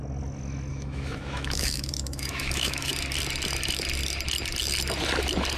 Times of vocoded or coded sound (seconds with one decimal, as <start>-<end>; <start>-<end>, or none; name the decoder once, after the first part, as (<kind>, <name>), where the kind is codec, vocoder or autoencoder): 0.7-2.9 (autoencoder, DAC-VAE)

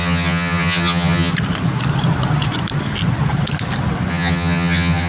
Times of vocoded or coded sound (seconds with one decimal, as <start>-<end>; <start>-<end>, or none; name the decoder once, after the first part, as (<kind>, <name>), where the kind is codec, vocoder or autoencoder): 0.0-1.3 (vocoder, HiFi-GAN); 4.1-5.1

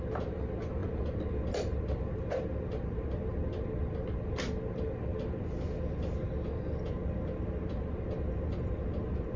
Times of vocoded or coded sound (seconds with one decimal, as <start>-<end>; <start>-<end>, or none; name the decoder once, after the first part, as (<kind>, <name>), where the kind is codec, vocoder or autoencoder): none

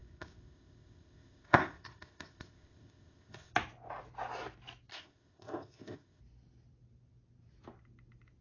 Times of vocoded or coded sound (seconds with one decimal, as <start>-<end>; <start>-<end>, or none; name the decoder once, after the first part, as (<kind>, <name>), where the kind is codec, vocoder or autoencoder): 0.0-3.5 (codec, ZipCodec); 4.9-6.2